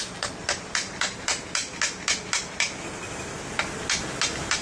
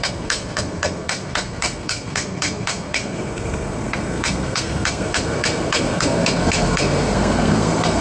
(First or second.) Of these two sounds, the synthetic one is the second